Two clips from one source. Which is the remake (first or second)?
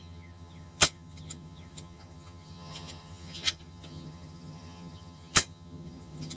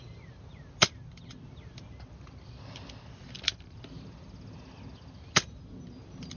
first